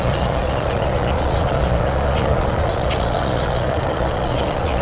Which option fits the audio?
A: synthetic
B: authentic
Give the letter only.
A